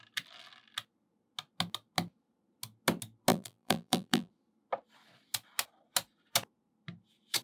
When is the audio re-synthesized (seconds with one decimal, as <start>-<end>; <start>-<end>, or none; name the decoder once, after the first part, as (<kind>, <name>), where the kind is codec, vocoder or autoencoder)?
3.3-4.3 (vocoder, BigVGAN v2)